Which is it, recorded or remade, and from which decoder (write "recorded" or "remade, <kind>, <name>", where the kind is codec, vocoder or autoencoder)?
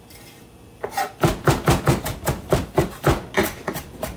recorded